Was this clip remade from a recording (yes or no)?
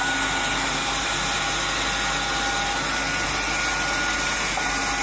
no